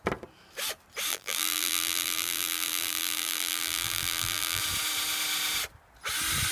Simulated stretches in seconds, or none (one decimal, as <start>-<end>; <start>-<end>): 1.1-4.6